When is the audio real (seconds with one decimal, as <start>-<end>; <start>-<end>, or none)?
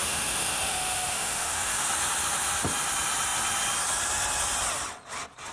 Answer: 1.9-5.5